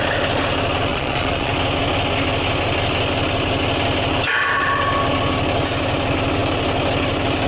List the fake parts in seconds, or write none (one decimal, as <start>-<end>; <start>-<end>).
0.9-1.5